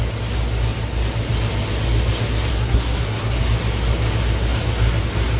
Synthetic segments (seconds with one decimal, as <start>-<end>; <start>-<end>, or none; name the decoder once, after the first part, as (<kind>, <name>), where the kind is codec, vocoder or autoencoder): 2.5-3.4 (codec, SNAC)